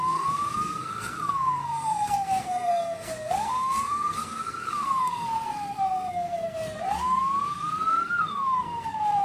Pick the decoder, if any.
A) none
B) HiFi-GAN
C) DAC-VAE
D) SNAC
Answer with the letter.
D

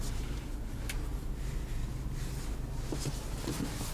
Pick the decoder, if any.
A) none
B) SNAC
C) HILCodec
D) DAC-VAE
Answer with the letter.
A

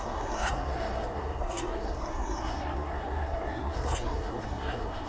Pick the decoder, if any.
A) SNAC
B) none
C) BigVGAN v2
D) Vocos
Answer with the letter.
A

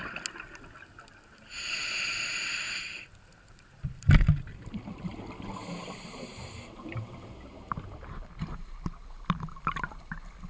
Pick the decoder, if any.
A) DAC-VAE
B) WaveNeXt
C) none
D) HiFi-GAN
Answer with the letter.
C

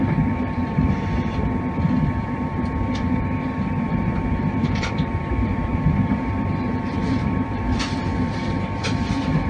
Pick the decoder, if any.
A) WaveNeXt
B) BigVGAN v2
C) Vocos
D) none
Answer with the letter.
B